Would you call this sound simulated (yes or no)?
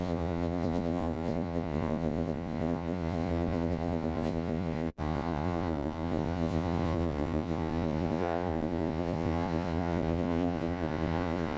yes